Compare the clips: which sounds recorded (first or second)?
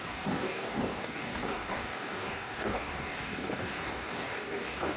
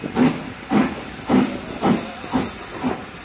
second